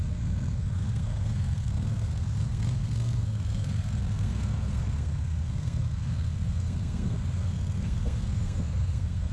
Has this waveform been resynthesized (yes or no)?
yes